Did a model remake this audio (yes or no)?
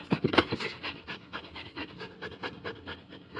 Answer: yes